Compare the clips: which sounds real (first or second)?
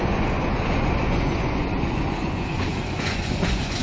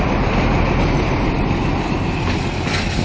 second